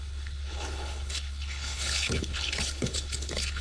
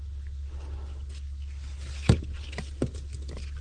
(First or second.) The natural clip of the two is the second